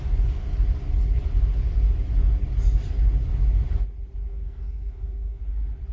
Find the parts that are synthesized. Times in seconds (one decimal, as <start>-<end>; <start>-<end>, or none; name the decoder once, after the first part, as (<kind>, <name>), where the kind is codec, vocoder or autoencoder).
4.3-5.4 (codec, SNAC)